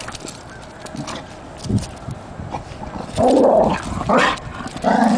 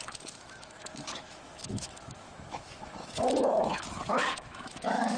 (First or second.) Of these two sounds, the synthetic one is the second